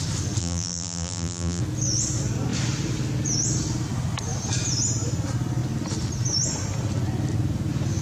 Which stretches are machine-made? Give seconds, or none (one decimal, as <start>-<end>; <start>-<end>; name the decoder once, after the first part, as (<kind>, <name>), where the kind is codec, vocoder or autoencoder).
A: 0.4-1.6 (vocoder, BigVGAN v2)